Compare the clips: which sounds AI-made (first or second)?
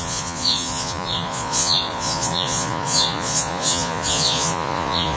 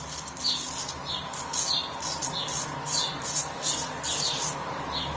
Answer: first